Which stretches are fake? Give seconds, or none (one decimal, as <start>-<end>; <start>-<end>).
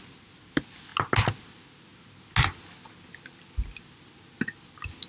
none